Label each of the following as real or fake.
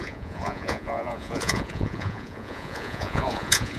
fake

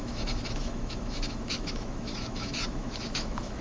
fake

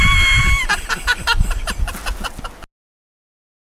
real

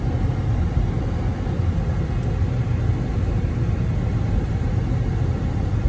real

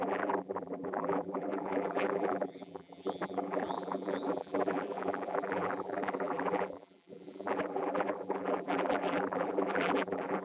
fake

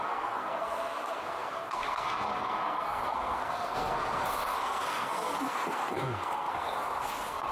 fake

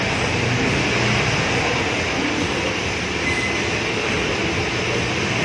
real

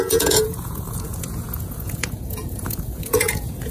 fake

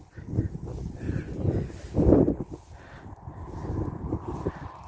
real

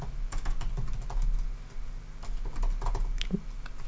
real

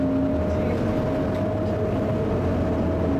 real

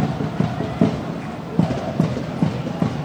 real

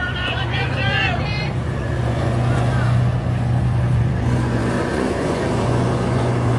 fake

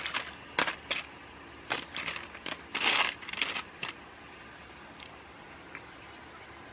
real